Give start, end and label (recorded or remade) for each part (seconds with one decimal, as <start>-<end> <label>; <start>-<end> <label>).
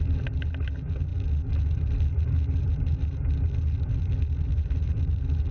0.0-5.5 recorded